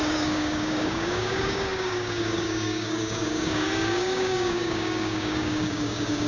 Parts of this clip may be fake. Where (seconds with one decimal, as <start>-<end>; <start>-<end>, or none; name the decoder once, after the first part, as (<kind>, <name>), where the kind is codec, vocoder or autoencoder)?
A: 0.0-6.3 (codec, DAC)